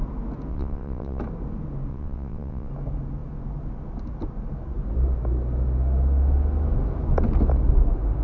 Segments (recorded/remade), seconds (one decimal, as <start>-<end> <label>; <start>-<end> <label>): 0.0-0.5 recorded; 0.5-1.2 remade; 1.2-1.9 recorded; 1.9-2.7 remade; 2.7-8.2 recorded